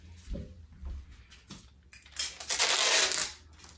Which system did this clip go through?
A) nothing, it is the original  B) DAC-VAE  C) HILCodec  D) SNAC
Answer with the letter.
A